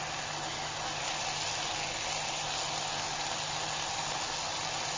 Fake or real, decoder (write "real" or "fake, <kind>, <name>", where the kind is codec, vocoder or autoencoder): real